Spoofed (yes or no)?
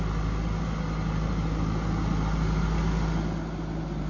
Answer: no